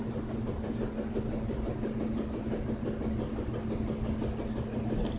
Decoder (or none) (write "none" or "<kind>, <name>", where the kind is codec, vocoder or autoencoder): none